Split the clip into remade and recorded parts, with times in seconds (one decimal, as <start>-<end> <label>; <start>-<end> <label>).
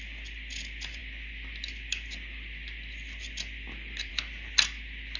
0.0-5.2 recorded